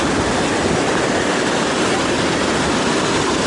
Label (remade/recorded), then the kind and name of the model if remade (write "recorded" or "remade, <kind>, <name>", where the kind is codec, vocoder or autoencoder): recorded